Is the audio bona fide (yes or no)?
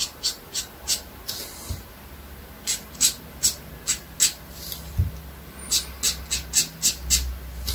yes